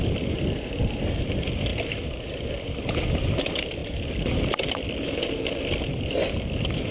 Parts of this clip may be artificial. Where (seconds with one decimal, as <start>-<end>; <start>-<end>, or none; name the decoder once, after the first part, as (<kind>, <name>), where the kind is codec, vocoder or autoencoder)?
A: none